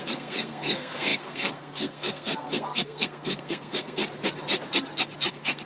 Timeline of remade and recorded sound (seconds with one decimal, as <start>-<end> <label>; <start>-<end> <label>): 0.0-4.0 remade; 4.0-5.3 recorded; 5.3-5.7 remade

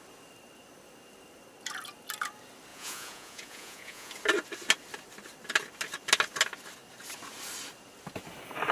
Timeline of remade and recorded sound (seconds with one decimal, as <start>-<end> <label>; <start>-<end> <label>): 0.0-2.7 recorded; 2.7-4.1 remade; 4.1-8.7 recorded